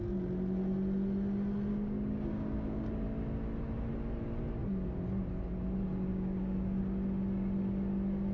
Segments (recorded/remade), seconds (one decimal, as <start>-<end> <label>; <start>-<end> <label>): 0.0-1.7 recorded; 1.7-2.9 remade; 2.9-6.1 recorded; 6.1-6.8 remade; 6.8-8.3 recorded